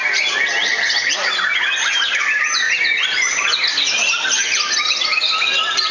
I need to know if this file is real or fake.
fake